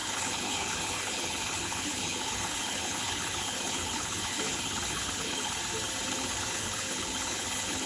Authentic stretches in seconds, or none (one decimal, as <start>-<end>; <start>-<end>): 5.6-6.1